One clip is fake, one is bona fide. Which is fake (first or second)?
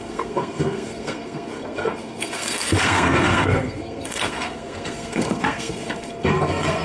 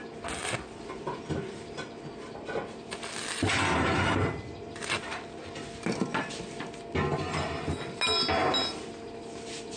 first